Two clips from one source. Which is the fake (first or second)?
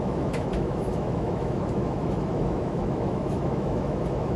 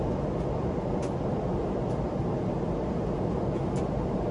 first